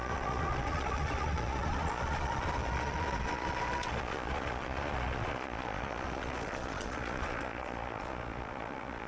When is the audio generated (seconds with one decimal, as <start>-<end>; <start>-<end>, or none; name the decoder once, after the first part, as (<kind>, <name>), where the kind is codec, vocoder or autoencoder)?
0.0-9.1 (vocoder, Vocos)